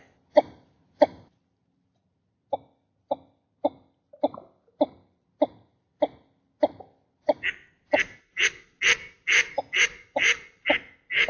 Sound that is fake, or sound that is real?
real